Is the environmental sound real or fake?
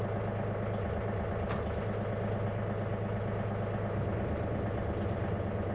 real